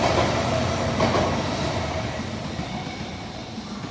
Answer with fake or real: real